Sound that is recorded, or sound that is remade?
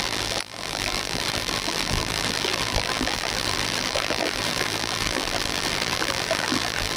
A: remade